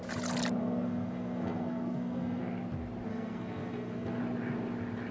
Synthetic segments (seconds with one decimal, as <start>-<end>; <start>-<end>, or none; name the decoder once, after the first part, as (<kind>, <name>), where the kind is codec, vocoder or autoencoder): 0.6-2.4 (codec, SNAC); 3.1-4.2